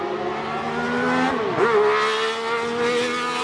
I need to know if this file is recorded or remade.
recorded